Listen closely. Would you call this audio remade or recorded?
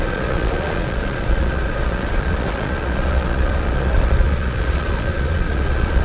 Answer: remade